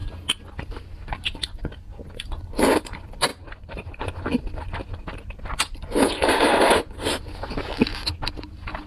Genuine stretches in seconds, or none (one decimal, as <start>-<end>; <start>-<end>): 0.0-3.3; 4.0-8.9